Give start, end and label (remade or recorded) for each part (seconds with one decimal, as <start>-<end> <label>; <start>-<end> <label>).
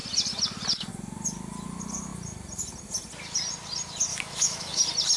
0.0-4.1 recorded; 4.1-4.8 remade; 4.8-5.2 recorded